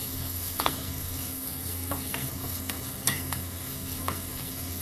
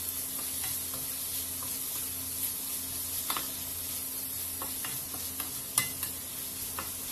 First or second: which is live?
second